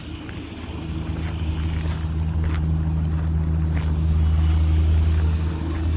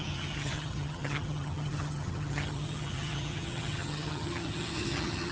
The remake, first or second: second